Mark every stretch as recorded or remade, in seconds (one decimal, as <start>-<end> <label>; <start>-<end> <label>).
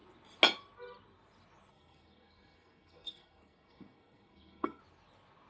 0.0-1.7 recorded; 1.7-4.8 remade; 4.8-5.5 recorded